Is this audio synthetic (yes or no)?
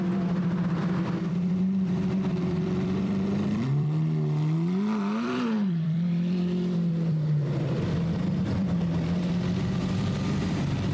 yes